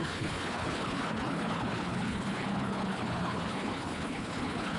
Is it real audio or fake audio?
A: fake